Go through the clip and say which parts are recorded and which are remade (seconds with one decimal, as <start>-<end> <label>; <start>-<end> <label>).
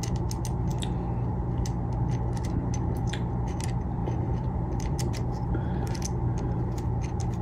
0.0-4.0 recorded; 4.0-6.9 remade; 6.9-7.4 recorded